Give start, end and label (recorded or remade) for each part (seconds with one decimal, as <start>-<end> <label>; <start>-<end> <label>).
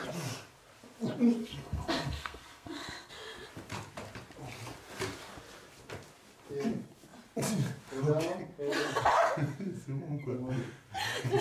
0.0-1.4 recorded; 1.4-3.1 remade; 3.1-11.4 recorded